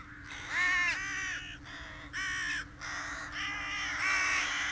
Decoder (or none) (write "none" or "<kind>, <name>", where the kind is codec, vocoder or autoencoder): none